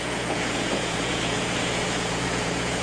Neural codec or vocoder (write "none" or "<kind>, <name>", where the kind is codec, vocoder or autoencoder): vocoder, Vocos